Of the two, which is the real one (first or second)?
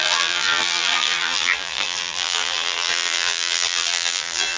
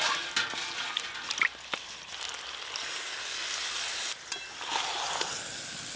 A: second